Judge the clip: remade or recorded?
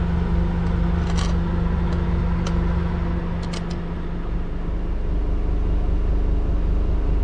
recorded